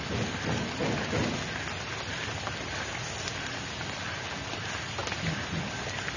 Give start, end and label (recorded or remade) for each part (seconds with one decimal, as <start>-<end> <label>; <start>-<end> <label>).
0.0-6.2 recorded

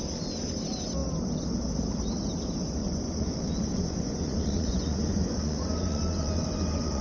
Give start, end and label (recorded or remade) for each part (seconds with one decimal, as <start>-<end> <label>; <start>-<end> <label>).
0.0-2.8 recorded; 2.8-7.0 remade

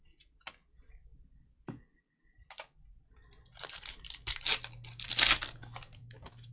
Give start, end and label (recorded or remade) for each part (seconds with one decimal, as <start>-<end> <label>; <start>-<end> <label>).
0.0-5.6 recorded; 5.6-6.5 remade

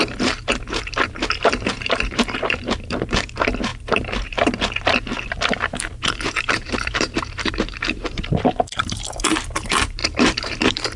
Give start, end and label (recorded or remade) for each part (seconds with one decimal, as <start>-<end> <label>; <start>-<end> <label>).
0.0-11.0 remade

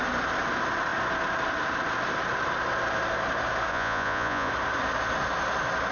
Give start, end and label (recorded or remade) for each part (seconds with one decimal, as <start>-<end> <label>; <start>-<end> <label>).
0.0-3.7 recorded; 3.7-4.5 remade; 4.5-5.9 recorded